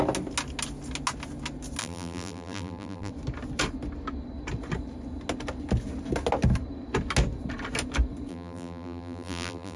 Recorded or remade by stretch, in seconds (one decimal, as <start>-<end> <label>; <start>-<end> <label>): 0.0-1.8 recorded; 1.8-3.1 remade; 3.1-8.3 recorded; 8.3-9.8 remade